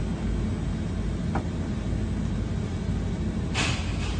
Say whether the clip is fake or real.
real